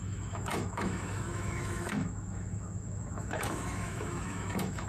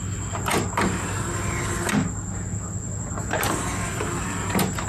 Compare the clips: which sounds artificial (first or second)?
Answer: first